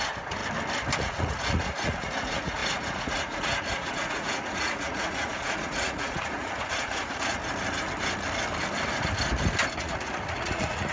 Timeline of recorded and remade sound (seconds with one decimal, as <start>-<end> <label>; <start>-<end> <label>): 0.0-0.4 remade; 0.4-1.0 recorded; 1.0-7.4 remade; 7.4-9.8 recorded; 9.8-10.9 remade